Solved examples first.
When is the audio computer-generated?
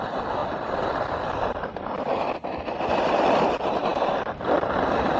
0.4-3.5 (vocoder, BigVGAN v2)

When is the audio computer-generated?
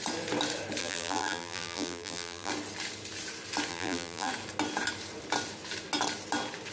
0.8-2.5 (vocoder, BigVGAN v2); 3.7-4.3